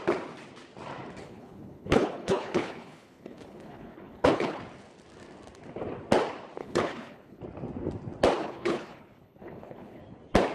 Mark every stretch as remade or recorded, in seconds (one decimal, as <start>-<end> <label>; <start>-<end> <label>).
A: 0.0-1.2 recorded; 1.2-4.6 remade; 4.6-6.6 recorded; 6.6-7.4 remade; 7.4-8.4 recorded; 8.4-10.0 remade; 10.0-10.5 recorded